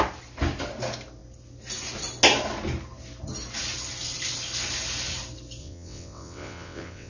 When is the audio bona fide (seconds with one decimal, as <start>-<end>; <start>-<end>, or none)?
0.0-5.6